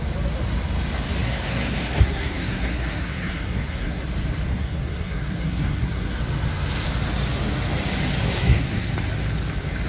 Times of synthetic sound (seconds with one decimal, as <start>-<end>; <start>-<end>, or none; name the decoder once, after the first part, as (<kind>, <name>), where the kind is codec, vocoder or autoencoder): 1.2-4.0 (codec, SNAC); 4.5-6.2; 8.2-8.9